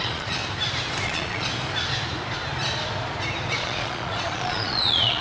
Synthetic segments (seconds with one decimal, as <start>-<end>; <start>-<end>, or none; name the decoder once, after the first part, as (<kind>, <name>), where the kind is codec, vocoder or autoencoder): 0.0-0.4 (vocoder, Vocos); 1.0-1.5; 3.5-5.2